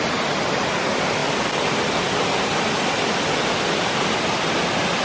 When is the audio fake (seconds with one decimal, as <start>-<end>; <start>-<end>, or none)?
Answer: none